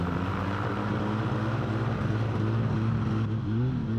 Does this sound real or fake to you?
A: real